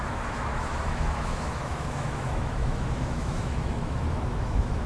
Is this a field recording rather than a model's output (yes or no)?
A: no